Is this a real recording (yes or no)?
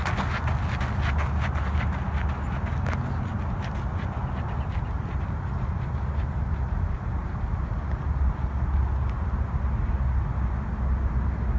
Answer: yes